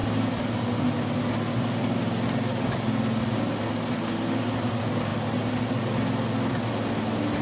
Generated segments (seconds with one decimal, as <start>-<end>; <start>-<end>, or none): none